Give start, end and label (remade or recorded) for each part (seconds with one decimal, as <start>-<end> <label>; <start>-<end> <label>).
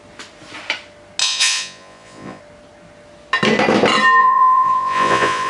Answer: 0.0-1.2 recorded; 1.2-2.4 remade; 2.4-4.2 recorded; 4.2-5.5 remade